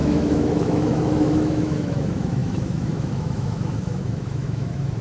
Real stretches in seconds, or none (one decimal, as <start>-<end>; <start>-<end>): none